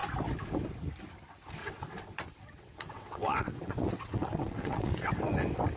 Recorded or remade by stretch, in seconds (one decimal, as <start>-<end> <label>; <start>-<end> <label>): 0.0-1.6 recorded; 1.6-5.1 remade; 5.1-5.8 recorded